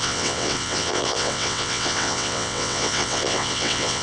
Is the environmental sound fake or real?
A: fake